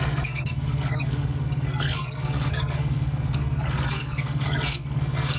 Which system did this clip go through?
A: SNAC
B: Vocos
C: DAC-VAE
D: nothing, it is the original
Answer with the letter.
A